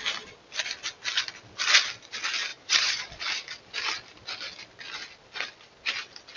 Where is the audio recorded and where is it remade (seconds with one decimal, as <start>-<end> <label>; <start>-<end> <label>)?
0.0-2.5 recorded; 2.5-3.0 remade; 3.0-6.4 recorded